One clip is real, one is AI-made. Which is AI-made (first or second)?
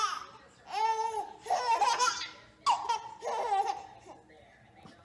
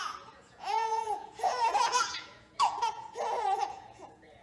second